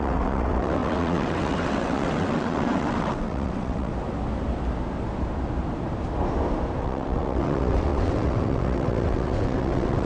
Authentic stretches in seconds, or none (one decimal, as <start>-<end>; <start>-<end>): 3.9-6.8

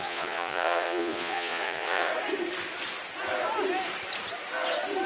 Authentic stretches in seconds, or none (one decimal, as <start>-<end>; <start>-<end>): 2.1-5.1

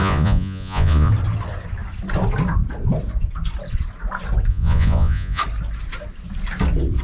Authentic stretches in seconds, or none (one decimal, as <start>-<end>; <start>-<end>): 1.1-4.5; 5.4-7.0

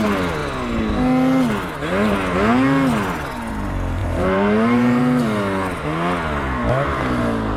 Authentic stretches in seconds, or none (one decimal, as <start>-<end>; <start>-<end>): 0.0-4.0; 5.0-7.6

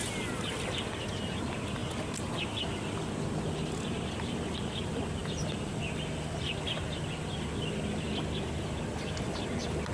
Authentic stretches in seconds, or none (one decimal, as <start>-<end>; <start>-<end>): 0.0-9.9

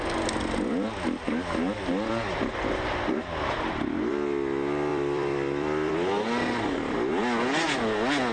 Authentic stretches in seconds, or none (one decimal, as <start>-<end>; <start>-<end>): 0.0-4.9; 5.9-8.3

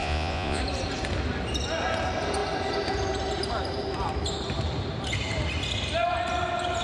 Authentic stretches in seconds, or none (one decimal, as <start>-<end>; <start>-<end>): 0.6-6.8

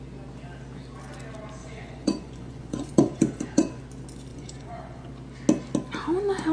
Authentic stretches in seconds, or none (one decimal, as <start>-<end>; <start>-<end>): 0.0-1.6; 3.8-4.3; 5.1-6.5